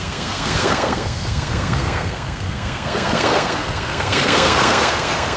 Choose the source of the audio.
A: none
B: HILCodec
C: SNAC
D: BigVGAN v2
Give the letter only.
C